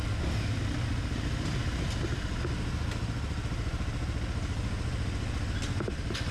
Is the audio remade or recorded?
recorded